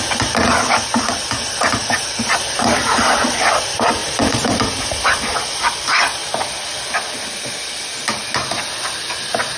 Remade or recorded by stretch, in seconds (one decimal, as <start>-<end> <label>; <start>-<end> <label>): 0.0-1.8 recorded; 1.8-3.3 remade; 3.3-4.0 recorded; 4.0-4.6 remade; 4.6-9.6 recorded